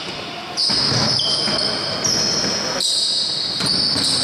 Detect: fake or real real